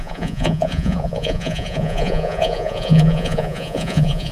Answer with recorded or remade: remade